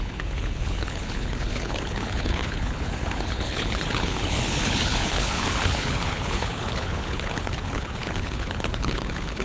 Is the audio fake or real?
fake